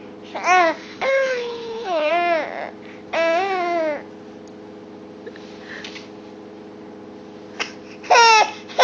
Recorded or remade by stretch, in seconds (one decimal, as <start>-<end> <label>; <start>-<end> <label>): 0.0-0.8 recorded; 0.8-2.1 remade; 2.1-8.8 recorded